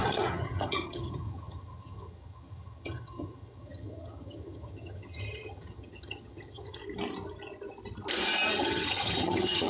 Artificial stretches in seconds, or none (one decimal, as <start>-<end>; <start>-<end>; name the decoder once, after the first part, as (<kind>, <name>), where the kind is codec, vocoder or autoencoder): 0.0-6.8 (vocoder, HiFi-GAN); 8.5-9.7